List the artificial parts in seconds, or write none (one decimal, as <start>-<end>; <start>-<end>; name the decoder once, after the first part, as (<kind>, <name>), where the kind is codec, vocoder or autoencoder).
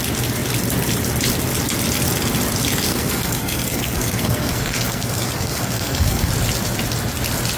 2.9-6.3 (codec, SNAC)